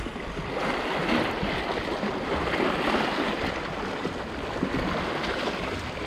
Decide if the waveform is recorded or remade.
recorded